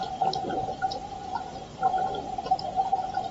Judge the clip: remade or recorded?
recorded